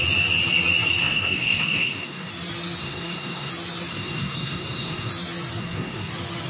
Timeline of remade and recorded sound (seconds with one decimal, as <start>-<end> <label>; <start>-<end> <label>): 0.0-1.0 recorded; 1.0-2.3 remade; 2.3-2.8 recorded; 2.8-3.5 remade; 3.5-3.9 recorded; 3.9-5.1 remade; 5.1-5.6 recorded; 5.6-6.1 remade; 6.1-6.5 recorded